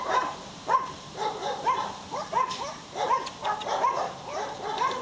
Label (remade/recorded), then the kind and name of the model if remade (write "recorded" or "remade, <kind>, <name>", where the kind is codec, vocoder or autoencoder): remade, vocoder, BigVGAN v2